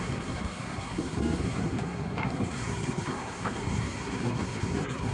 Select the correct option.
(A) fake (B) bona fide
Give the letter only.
A